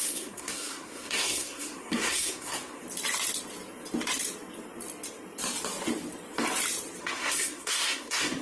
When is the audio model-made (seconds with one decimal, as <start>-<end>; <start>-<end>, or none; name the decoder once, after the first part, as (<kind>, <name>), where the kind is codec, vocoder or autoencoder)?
0.0-2.8 (codec, SNAC); 7.0-8.4